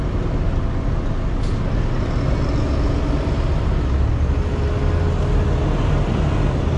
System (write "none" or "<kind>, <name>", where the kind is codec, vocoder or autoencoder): none